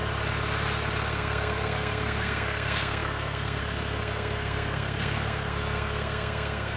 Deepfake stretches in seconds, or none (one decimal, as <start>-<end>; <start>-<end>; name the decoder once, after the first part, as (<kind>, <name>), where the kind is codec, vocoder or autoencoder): 1.1-6.8 (codec, SNAC)